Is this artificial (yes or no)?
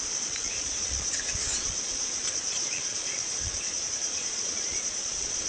yes